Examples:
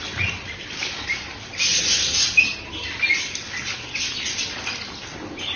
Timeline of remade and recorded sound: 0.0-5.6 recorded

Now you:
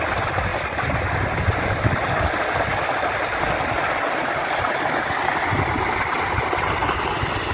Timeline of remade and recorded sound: 0.0-7.5 recorded